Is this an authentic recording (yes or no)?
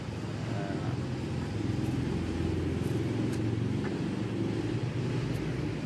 yes